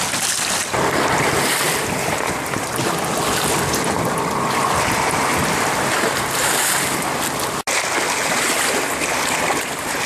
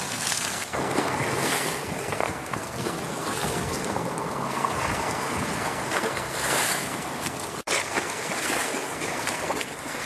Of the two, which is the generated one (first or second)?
second